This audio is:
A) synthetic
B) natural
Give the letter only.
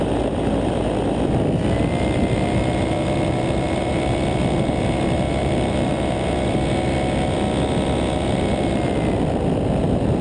B